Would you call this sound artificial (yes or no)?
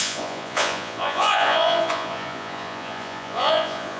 yes